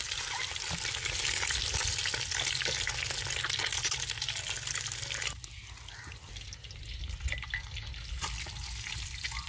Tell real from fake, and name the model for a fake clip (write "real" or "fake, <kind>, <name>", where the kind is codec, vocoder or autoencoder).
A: real